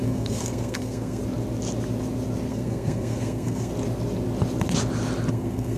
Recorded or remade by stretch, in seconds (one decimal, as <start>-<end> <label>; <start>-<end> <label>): 0.0-1.2 remade; 1.2-2.5 recorded; 2.5-3.7 remade; 3.7-5.3 recorded; 5.3-5.8 remade